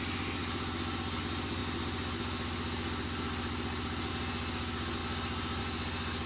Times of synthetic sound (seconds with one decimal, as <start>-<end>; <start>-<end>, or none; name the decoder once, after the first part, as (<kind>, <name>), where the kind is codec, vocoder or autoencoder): none